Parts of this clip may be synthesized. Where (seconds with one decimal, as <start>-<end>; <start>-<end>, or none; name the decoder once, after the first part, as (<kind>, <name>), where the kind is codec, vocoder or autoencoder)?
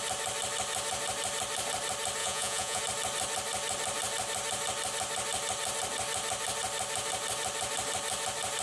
2.2-2.8 (vocoder, Vocos)